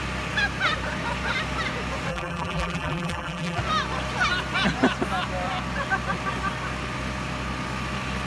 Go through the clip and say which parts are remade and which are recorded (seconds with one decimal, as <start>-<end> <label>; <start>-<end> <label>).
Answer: 0.0-2.1 recorded; 2.1-3.6 remade; 3.6-8.3 recorded